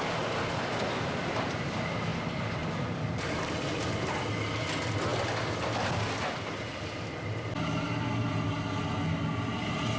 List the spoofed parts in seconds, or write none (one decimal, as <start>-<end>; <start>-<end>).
none